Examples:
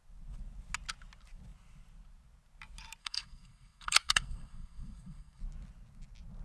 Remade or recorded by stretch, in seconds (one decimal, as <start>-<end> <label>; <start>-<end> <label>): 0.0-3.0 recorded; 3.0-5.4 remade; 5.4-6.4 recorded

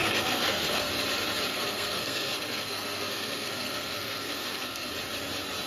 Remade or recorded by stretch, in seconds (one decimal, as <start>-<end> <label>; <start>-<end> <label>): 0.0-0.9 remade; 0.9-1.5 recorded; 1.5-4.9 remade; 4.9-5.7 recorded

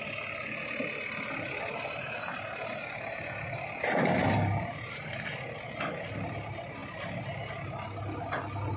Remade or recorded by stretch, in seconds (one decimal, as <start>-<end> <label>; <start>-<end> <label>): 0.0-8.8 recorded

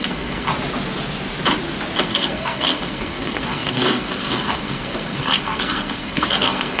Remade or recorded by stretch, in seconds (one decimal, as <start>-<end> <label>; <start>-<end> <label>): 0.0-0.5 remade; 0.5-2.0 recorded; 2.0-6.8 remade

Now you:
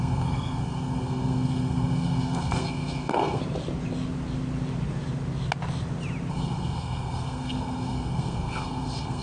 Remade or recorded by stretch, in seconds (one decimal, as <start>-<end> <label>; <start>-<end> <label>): 0.0-3.4 remade; 3.4-6.3 recorded; 6.3-9.2 remade